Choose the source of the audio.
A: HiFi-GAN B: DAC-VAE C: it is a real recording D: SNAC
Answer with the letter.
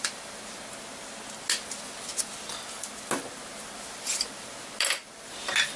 C